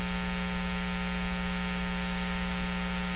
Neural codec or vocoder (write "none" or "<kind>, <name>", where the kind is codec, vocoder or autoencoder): none